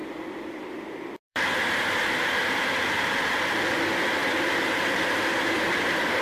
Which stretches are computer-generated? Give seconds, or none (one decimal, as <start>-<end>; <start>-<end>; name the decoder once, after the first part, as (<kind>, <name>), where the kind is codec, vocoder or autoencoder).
0.0-1.9 (vocoder, BigVGAN v2); 4.2-6.2